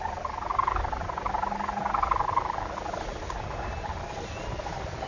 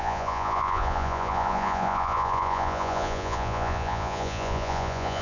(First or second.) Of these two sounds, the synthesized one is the second